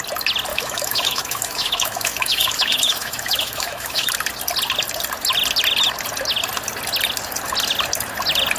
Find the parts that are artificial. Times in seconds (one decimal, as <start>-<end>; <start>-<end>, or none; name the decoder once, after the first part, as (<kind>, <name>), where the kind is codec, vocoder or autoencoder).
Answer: 0.5-4.1 (autoencoder, DAC-VAE)